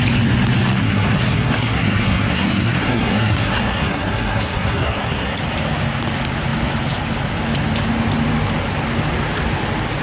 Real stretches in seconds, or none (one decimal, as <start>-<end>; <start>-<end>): 0.0-0.8; 5.4-10.0